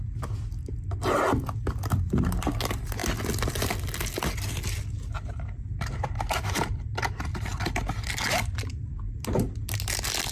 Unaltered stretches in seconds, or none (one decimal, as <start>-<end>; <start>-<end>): 0.0-10.3